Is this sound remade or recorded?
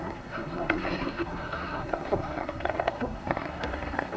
remade